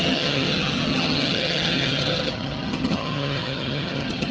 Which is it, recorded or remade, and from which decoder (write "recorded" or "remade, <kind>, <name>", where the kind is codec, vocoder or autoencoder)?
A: remade, vocoder, HiFi-GAN